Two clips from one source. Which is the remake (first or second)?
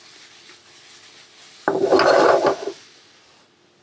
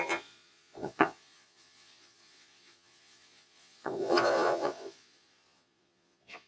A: second